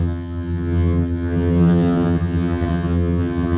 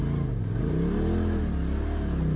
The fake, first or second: first